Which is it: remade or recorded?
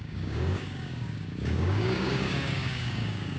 remade